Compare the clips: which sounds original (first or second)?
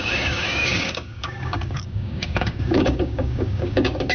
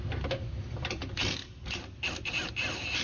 second